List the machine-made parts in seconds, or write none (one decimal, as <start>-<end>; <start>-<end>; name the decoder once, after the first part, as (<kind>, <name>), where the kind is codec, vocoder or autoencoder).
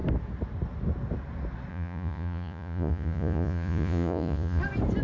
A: 1.7-4.6 (vocoder, Vocos)